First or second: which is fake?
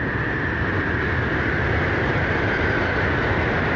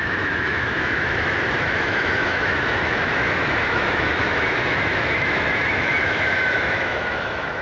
second